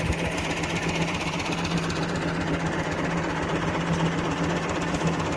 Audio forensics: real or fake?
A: real